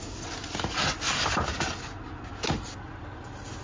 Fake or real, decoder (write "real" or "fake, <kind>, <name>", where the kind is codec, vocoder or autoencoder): real